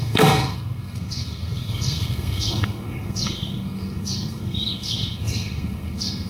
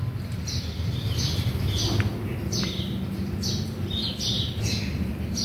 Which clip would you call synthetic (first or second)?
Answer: first